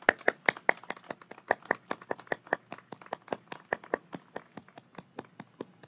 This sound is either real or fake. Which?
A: real